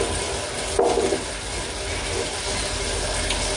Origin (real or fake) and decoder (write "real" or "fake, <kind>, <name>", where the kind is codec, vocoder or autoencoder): real